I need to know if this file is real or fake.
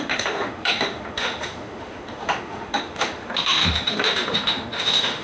fake